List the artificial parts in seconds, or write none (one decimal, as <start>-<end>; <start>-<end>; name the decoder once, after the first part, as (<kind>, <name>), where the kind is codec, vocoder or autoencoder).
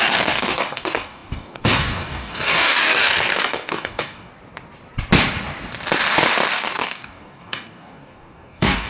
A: 0.0-4.3 (codec, DAC); 6.5-8.9